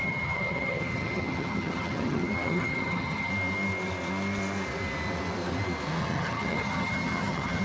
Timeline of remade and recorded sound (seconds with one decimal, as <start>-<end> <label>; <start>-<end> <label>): 0.0-3.3 remade; 3.3-6.0 recorded; 6.0-7.6 remade